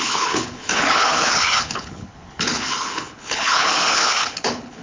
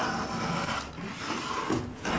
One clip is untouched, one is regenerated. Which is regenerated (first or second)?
first